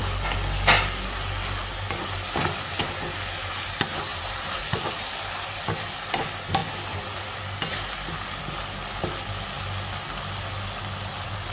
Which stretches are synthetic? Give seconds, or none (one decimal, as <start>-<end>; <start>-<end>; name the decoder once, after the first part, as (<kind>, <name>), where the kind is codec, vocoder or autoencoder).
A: 4.1-4.6 (vocoder, BigVGAN v2)